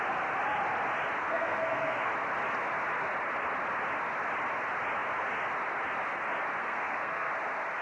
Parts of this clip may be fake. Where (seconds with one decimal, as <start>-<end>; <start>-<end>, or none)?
1.2-2.1; 6.6-7.3